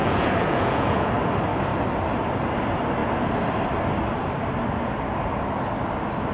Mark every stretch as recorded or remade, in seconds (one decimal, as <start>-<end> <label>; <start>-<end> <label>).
0.0-1.1 remade; 1.1-6.3 recorded